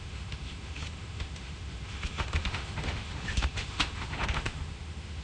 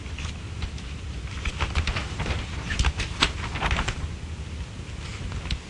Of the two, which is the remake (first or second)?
first